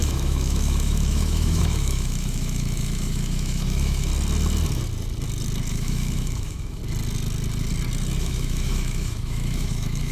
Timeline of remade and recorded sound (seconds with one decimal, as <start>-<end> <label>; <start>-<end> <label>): 0.0-4.1 remade; 4.1-5.7 recorded; 5.7-6.8 remade; 6.8-8.2 recorded; 8.2-10.1 remade